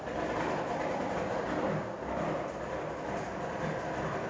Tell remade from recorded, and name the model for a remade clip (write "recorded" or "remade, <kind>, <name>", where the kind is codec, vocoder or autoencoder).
recorded